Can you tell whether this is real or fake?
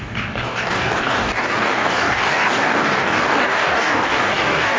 fake